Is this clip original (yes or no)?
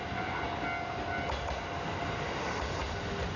yes